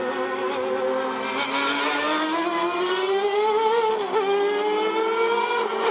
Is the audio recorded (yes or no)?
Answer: yes